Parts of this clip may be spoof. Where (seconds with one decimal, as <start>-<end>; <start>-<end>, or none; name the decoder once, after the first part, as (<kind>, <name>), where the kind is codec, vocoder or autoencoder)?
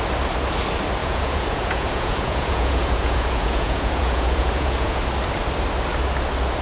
1.0-5.0 (vocoder, Vocos)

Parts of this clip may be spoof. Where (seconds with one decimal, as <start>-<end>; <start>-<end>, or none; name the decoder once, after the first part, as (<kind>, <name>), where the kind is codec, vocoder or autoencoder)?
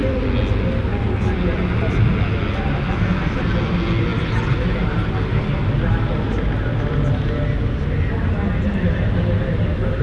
none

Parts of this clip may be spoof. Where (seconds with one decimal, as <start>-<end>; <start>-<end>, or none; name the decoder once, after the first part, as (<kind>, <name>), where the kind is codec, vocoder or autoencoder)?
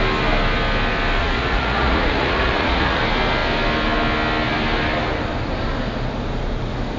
1.2-3.0 (vocoder, Vocos)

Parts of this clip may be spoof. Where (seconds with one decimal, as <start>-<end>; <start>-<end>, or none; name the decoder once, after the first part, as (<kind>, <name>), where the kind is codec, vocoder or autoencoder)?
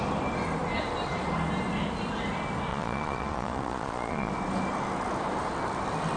2.7-4.3 (vocoder, Vocos)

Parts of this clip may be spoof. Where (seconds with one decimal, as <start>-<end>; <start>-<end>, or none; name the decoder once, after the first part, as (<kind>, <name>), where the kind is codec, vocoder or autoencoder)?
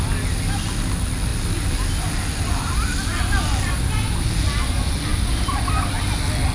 none